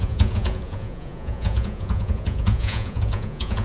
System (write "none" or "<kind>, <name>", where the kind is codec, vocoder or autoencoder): vocoder, Vocos